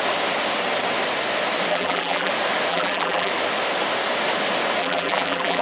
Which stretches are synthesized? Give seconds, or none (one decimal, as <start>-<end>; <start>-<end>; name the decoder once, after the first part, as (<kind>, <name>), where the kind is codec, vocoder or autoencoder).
1.7-2.3 (vocoder, BigVGAN v2); 2.7-3.3; 4.8-5.6